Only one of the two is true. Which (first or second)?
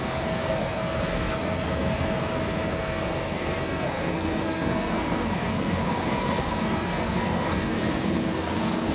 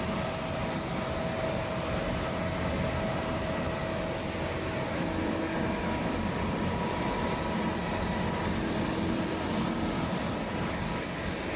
second